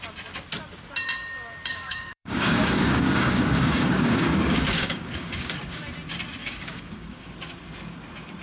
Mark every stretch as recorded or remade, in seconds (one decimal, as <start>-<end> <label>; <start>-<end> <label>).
0.0-1.7 recorded; 1.7-5.8 remade; 5.8-6.4 recorded; 6.4-7.2 remade; 7.2-8.4 recorded